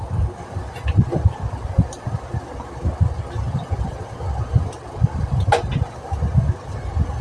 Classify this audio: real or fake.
real